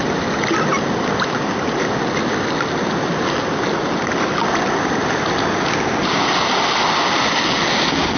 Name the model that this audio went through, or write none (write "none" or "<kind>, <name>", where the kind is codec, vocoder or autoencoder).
none